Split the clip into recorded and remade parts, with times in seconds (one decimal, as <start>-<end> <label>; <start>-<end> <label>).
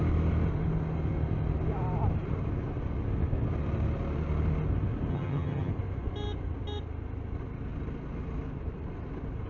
0.0-5.1 recorded; 5.1-5.7 remade; 5.7-9.5 recorded